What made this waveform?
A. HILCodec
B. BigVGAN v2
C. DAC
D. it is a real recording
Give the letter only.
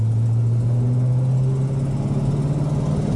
D